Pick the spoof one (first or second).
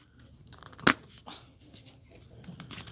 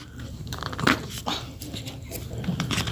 second